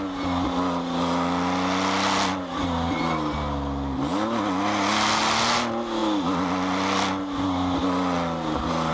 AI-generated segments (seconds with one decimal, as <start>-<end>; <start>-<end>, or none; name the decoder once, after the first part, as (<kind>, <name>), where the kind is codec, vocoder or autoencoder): none